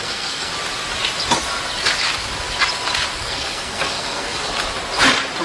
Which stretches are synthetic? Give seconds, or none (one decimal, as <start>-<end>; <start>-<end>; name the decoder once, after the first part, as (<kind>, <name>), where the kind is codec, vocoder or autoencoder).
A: 0.0-0.5 (codec, SNAC); 3.1-4.5

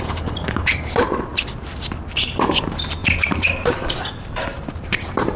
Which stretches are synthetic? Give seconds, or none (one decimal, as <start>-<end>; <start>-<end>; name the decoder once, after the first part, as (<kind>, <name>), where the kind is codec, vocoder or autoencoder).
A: 0.0-1.3 (vocoder, BigVGAN v2); 2.1-5.4

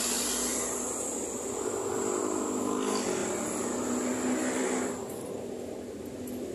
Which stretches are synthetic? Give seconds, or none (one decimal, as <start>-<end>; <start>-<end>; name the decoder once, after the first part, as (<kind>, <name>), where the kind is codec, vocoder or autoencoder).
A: 0.5-2.2 (vocoder, BigVGAN v2); 3.2-4.8

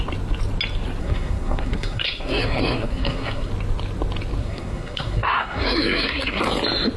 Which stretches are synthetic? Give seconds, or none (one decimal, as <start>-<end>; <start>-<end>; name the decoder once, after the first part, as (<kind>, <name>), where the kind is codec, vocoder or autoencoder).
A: 1.0-3.5 (codec, SNAC); 4.4-6.4